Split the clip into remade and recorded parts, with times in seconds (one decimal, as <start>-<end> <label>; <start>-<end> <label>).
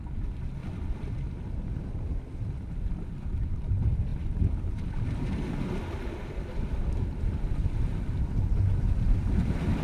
0.0-9.8 recorded